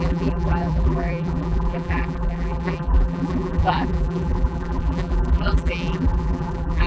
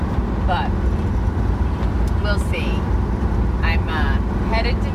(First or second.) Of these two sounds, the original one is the second